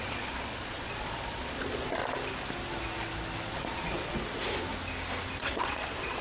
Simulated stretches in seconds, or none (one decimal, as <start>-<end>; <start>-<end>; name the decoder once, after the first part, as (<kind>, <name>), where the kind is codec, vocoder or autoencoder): 0.0-2.0 (vocoder, Vocos); 3.5-4.2; 5.4-6.2